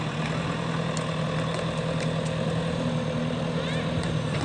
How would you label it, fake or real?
real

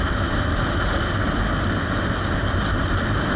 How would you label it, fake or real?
real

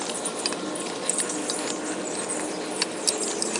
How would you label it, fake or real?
real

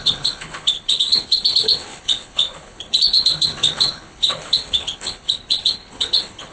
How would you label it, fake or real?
fake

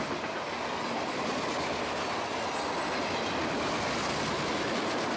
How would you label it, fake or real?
real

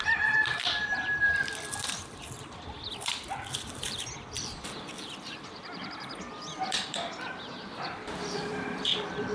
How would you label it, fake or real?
fake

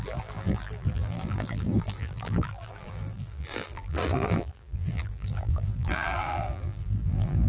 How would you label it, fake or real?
fake